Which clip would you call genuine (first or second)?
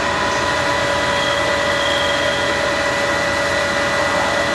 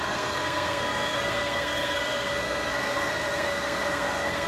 first